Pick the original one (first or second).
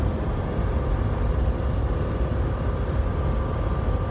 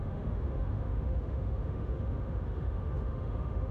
first